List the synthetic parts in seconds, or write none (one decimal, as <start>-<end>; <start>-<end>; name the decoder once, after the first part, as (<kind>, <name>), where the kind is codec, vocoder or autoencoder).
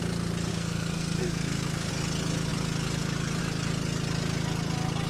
0.5-1.9 (codec, SNAC)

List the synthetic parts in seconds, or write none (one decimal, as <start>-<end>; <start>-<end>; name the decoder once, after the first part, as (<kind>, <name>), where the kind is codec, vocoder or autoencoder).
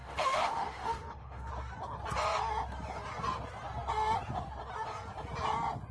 0.0-1.5 (autoencoder, DAC-VAE)